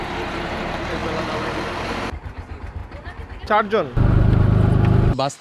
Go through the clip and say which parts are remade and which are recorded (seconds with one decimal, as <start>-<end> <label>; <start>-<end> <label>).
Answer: 0.0-1.0 remade; 1.0-1.8 recorded; 1.8-2.8 remade; 2.8-5.4 recorded